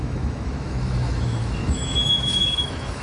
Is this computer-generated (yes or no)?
yes